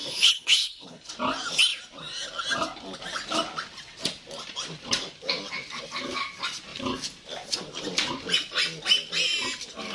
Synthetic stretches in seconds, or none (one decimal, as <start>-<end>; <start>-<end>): 0.0-1.1